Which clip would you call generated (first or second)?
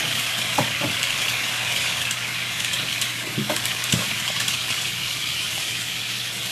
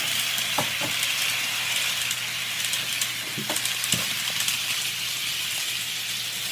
first